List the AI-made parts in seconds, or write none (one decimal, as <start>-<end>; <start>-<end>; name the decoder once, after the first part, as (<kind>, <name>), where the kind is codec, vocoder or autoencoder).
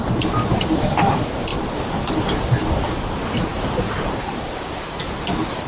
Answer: 3.5-5.0 (vocoder, BigVGAN v2)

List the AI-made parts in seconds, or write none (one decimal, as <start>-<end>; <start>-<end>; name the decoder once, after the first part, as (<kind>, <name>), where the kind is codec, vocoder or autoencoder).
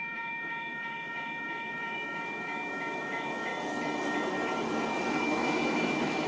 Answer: 0.0-3.5 (autoencoder, DAC-VAE); 5.2-6.3